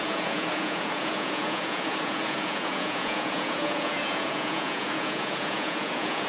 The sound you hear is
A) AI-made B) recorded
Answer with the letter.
A